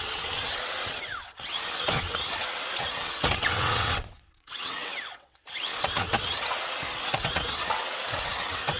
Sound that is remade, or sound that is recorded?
remade